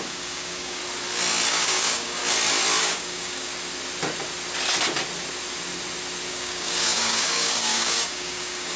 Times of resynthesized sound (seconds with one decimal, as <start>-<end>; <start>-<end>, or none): 0.0-0.8; 1.5-2.2; 2.8-3.5; 6.3-8.8